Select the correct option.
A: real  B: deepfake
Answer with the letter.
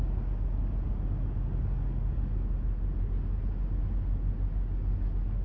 A